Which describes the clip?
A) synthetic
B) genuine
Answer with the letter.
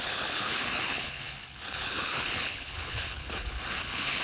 A